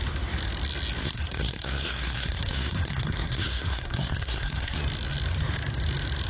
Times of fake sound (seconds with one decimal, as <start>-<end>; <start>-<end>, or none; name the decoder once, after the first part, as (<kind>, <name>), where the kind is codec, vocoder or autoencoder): 1.0-4.8 (codec, SNAC)